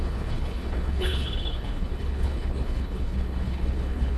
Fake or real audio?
fake